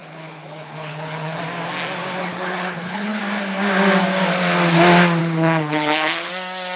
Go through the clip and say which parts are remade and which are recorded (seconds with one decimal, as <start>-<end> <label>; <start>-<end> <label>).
0.0-1.4 remade; 1.4-2.2 recorded; 2.2-3.2 remade; 3.2-5.2 recorded; 5.2-6.3 remade; 6.3-6.8 recorded

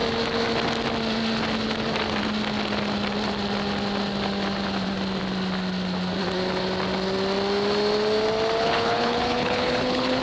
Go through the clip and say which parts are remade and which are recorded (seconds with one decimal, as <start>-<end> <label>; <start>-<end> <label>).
0.0-8.6 recorded; 8.6-10.2 remade